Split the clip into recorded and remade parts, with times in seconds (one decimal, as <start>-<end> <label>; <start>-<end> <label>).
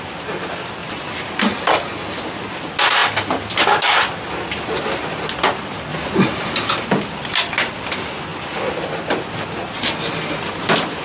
0.0-0.8 recorded; 0.8-1.3 remade; 1.3-5.9 recorded; 5.9-6.7 remade; 6.7-11.0 recorded